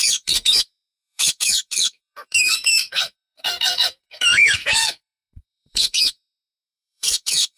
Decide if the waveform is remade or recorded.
remade